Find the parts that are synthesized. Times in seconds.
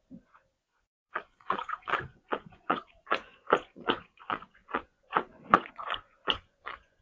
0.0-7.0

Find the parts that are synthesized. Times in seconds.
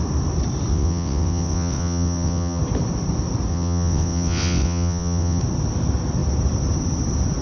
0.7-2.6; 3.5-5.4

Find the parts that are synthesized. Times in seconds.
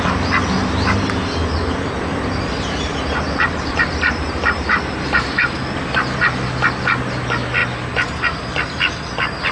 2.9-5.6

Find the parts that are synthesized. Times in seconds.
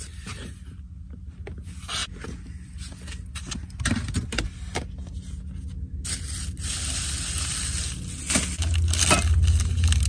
none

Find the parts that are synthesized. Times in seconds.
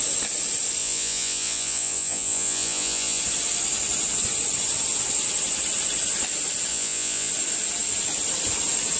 0.8-3.2; 6.7-7.3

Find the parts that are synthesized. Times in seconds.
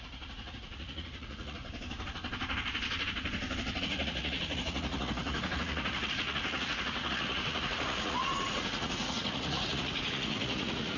0.0-1.6; 3.8-11.0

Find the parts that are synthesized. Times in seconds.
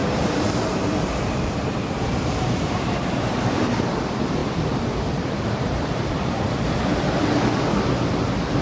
0.0-3.6; 4.4-6.7